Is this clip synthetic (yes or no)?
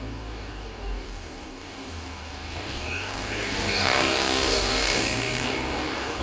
yes